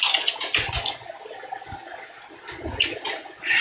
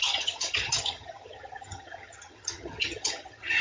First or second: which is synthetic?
second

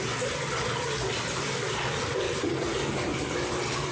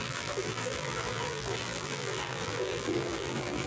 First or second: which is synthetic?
second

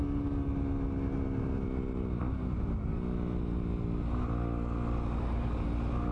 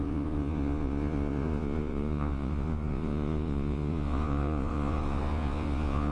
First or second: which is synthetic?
second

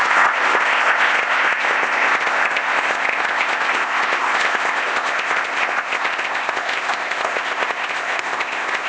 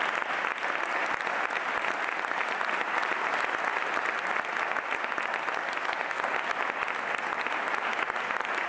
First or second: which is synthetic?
first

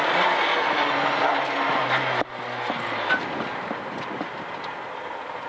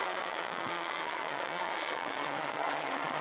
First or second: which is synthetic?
second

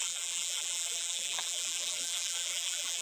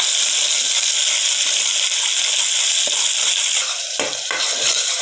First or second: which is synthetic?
first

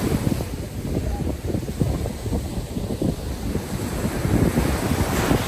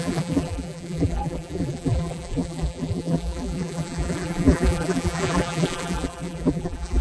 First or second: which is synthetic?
second